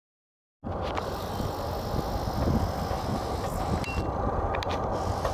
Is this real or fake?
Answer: real